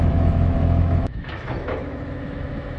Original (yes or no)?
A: no